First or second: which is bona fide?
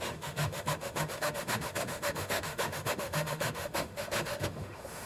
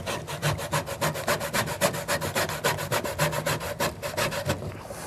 second